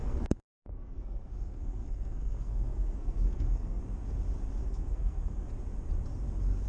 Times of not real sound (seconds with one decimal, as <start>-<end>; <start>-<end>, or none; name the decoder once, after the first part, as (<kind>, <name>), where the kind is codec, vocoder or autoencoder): 0.0-3.8 (codec, SNAC); 4.6-5.5